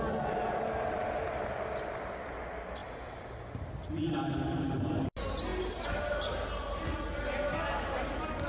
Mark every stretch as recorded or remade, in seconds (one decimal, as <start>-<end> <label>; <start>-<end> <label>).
0.0-8.5 recorded